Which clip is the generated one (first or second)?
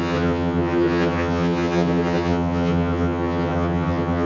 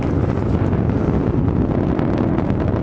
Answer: first